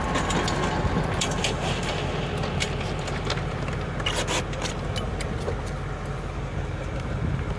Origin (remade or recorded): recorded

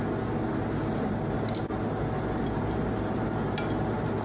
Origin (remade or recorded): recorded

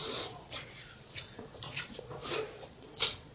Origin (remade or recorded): remade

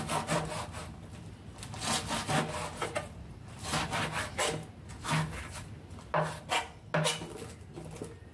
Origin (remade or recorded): recorded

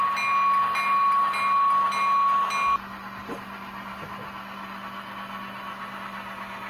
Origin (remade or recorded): recorded